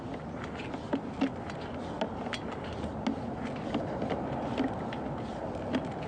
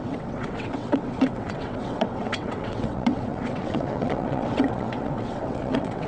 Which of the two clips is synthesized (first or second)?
second